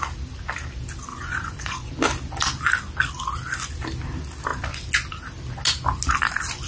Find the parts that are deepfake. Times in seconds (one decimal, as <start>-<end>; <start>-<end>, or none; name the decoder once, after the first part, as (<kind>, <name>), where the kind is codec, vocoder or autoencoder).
1.1-1.9 (vocoder, Vocos)